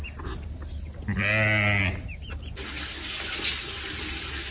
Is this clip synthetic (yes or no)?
no